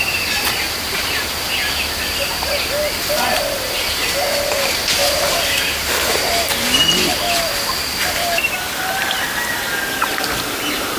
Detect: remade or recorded remade